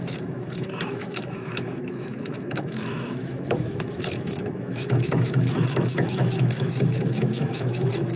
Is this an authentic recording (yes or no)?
no